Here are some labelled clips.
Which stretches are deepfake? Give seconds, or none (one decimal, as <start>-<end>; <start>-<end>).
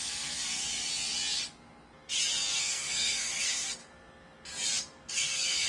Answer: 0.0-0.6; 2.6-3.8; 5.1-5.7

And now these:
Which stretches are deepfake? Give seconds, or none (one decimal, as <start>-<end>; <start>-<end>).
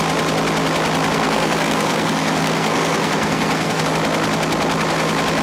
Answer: 1.1-3.8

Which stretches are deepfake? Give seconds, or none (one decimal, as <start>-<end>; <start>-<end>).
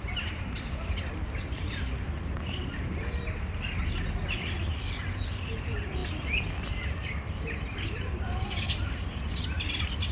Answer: none